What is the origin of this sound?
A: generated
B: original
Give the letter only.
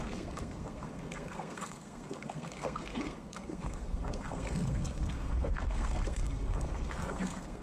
A